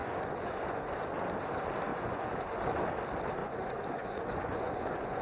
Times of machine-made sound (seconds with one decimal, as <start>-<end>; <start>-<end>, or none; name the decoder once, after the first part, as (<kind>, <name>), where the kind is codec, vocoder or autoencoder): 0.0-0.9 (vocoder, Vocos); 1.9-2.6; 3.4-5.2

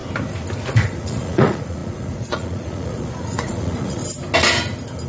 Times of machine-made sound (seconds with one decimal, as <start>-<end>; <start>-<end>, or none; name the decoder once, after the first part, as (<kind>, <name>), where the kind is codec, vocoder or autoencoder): 0.6-4.0 (vocoder, Vocos)

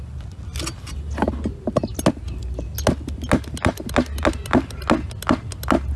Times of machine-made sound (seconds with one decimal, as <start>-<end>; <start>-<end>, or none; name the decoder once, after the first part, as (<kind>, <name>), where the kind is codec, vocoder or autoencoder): none